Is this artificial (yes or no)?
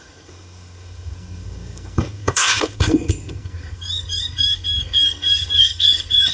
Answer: yes